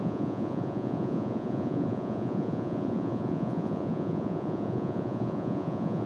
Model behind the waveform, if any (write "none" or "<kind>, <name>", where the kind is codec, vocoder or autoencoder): vocoder, Vocos